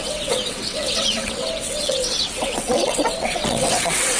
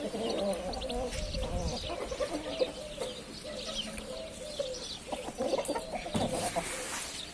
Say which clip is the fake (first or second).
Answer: first